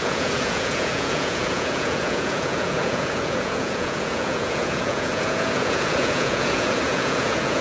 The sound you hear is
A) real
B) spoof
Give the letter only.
B